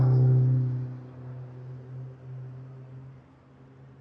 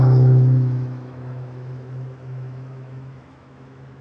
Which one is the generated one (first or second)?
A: second